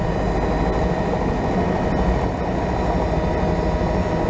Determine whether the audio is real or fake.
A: real